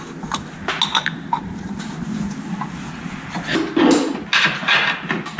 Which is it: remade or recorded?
recorded